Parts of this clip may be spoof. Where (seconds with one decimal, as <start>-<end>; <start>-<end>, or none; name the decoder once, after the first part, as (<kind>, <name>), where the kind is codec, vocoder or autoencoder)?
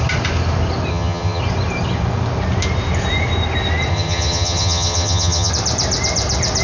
0.9-1.4 (vocoder, HiFi-GAN); 3.9-5.5